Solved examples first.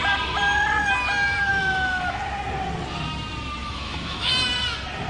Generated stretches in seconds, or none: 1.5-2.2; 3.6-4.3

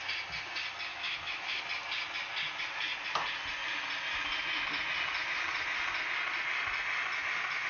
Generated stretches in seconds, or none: 0.9-1.6

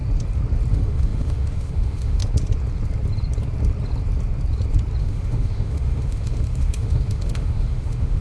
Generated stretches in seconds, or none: 0.7-2.2; 5.0-8.2

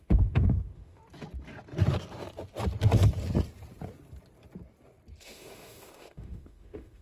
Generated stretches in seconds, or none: 0.0-1.0; 5.2-7.0